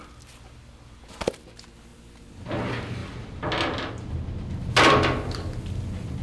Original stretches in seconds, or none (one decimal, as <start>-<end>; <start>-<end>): 0.0-6.2